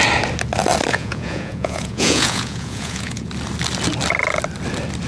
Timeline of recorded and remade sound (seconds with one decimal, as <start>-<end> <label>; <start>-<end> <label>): 0.0-0.9 recorded; 0.9-3.3 remade; 3.3-5.1 recorded